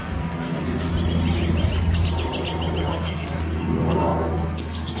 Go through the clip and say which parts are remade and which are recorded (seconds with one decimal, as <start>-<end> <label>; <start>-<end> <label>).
0.0-0.9 remade; 0.9-2.9 recorded; 2.9-5.0 remade